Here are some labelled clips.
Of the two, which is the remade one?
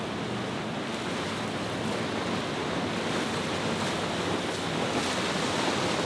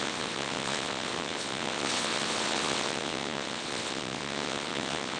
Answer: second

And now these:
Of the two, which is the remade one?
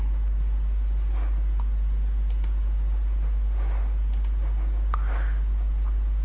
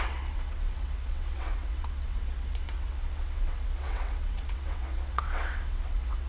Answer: second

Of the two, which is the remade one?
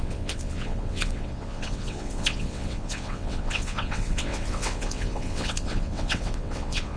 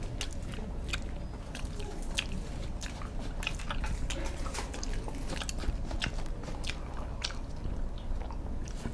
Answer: first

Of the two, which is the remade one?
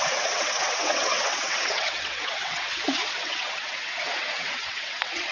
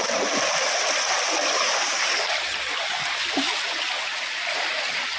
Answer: first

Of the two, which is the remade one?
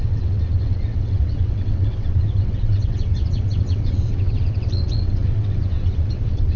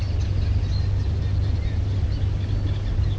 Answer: first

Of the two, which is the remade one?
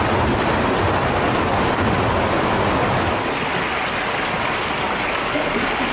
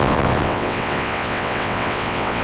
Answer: second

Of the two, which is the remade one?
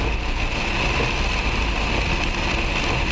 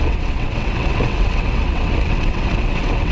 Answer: second